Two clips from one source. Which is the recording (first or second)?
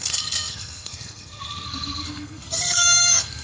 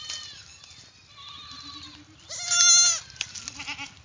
second